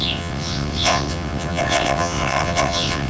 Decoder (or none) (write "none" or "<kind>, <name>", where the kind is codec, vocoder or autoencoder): vocoder, WaveNeXt